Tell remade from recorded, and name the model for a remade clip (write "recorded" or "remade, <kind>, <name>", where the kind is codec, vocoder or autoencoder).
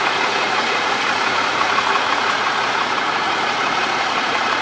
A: remade, vocoder, Vocos